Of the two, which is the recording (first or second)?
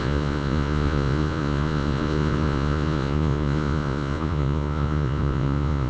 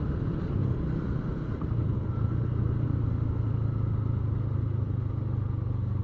second